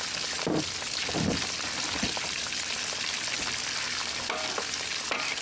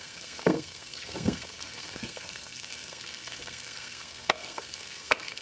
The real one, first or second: first